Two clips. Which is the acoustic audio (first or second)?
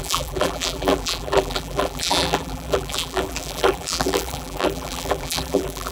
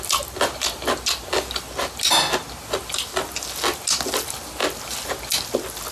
second